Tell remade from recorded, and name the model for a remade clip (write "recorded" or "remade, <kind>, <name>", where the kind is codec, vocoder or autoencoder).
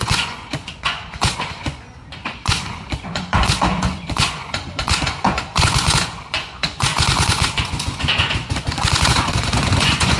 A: remade, vocoder, Vocos